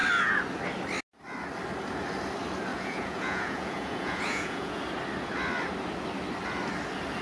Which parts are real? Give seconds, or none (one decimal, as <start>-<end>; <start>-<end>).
0.0-2.7; 4.8-7.2